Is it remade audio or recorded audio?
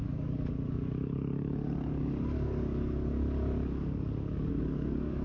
remade